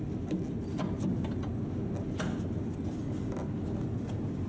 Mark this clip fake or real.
real